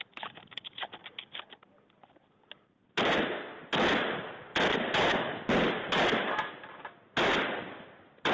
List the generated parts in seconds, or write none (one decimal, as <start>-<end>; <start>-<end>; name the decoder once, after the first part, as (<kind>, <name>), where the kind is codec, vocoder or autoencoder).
none